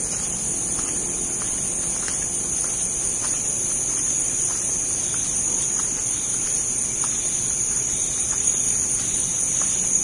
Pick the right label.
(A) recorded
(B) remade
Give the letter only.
A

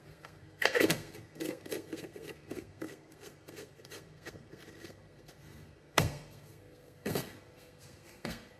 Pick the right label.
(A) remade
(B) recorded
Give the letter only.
A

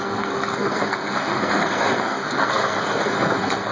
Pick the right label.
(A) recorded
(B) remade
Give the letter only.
B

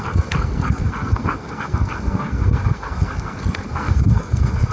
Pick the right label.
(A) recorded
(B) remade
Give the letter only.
B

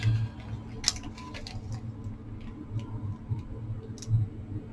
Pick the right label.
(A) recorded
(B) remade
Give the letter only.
A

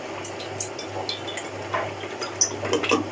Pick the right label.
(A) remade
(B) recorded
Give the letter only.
B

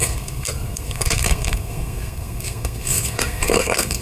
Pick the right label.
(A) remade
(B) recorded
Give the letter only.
A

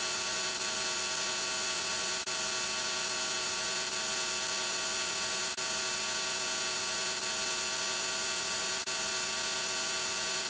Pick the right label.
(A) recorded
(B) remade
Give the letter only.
A